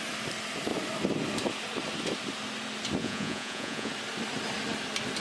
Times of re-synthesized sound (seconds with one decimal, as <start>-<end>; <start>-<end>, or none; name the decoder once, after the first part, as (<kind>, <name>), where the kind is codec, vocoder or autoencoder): 3.0-3.9 (vocoder, Vocos)